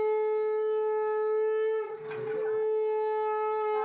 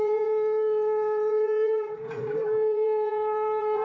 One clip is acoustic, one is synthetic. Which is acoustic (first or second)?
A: first